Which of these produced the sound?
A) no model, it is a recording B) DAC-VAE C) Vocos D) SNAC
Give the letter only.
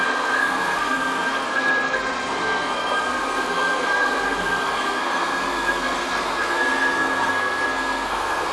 D